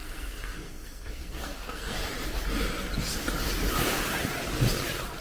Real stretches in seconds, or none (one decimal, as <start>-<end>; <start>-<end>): 2.0-5.2